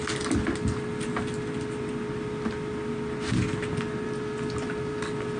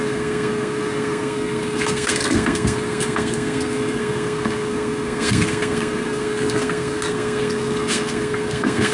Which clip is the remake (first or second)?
second